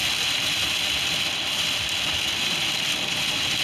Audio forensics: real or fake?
fake